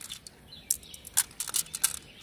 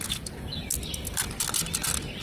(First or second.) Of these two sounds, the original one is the first